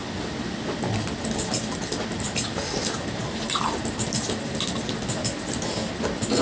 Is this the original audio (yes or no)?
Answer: yes